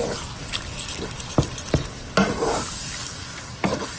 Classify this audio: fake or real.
real